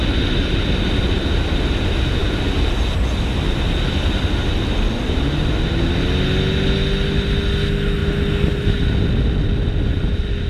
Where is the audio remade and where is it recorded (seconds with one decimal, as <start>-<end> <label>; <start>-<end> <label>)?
0.0-10.5 recorded